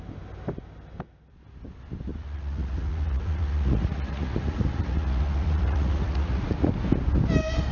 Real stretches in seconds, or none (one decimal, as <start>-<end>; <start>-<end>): 0.0-2.1; 6.7-7.7